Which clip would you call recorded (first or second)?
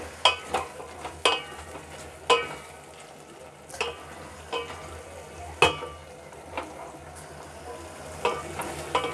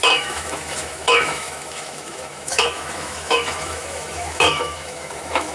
first